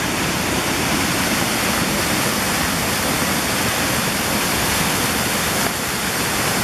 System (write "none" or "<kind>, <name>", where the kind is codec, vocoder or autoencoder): none